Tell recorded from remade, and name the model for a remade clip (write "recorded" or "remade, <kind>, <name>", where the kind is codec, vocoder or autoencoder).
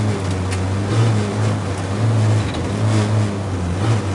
recorded